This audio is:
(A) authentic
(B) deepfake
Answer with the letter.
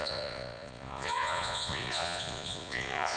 B